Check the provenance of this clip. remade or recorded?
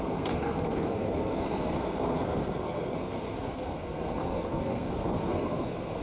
remade